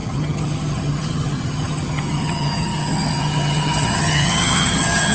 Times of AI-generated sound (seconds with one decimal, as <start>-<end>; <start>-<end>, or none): 0.0-5.1